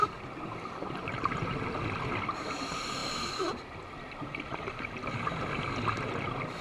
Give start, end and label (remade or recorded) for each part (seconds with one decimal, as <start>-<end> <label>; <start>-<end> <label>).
0.0-6.6 recorded